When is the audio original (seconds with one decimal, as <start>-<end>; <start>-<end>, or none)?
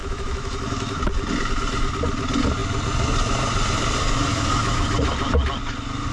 1.0-4.3; 4.8-6.1